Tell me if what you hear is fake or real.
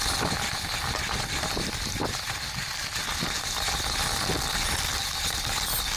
real